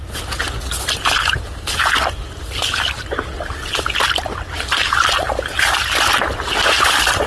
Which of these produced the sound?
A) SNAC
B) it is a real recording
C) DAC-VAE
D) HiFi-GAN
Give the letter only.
B